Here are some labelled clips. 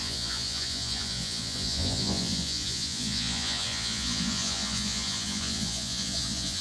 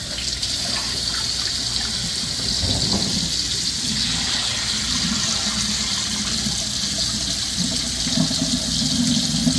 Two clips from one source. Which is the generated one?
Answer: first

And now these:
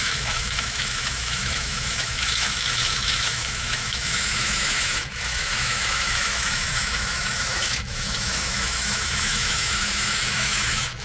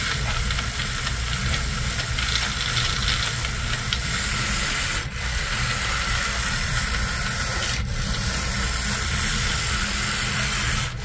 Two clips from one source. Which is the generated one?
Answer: first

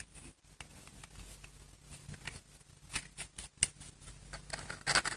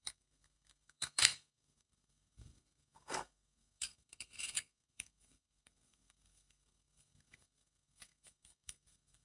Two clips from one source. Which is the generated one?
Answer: second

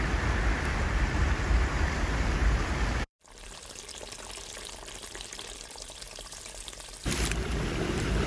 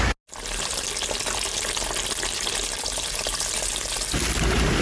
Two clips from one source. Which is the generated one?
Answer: first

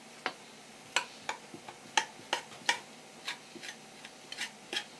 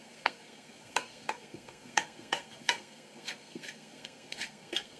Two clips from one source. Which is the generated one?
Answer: second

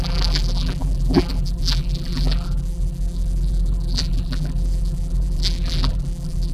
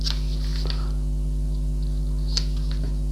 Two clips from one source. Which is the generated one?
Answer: first